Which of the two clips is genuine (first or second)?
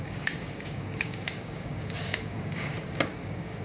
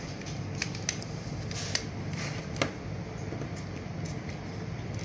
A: second